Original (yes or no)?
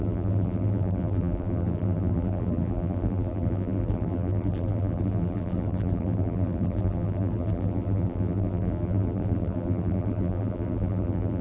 no